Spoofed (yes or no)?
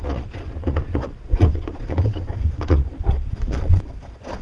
yes